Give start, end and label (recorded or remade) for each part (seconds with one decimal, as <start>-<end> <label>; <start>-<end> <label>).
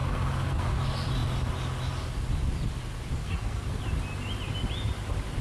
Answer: 0.0-0.7 remade; 0.7-3.2 recorded; 3.2-3.8 remade; 3.8-5.4 recorded